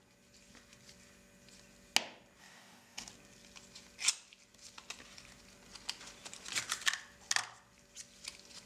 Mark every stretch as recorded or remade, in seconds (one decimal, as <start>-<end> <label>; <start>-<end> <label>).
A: 0.0-2.4 recorded; 2.4-3.1 remade; 3.1-8.7 recorded